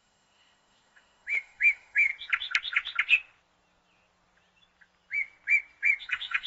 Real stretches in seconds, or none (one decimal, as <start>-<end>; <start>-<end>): 2.1-6.0